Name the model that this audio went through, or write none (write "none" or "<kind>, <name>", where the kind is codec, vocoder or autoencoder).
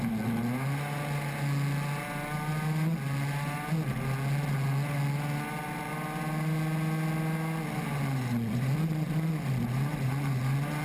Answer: none